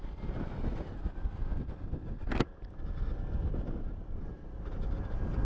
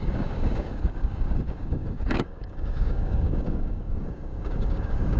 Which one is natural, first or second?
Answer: first